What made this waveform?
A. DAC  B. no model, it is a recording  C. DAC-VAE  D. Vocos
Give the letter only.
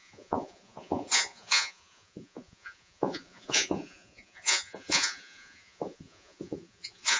D